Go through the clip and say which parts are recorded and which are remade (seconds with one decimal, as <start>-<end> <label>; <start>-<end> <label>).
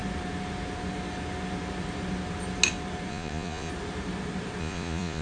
0.0-3.1 recorded; 3.1-3.7 remade; 3.7-4.6 recorded; 4.6-5.2 remade